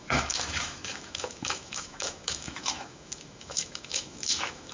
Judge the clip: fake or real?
fake